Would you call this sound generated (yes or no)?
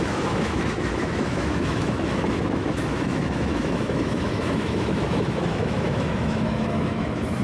yes